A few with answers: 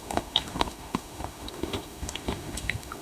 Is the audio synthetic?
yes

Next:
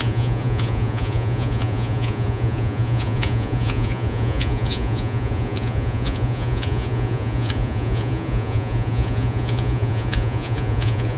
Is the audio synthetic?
yes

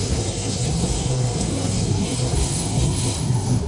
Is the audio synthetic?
yes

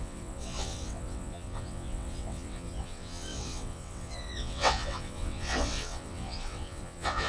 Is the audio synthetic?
yes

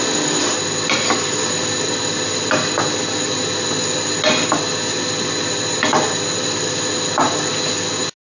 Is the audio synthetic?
no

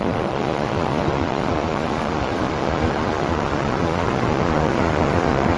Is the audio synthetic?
yes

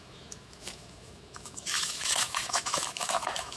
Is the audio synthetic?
yes